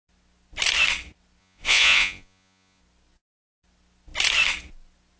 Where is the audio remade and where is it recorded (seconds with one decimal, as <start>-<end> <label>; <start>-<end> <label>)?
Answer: 0.0-1.4 recorded; 1.4-2.8 remade; 2.8-5.2 recorded